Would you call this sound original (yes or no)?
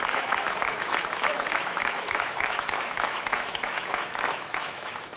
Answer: no